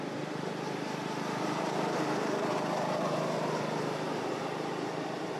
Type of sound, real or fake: fake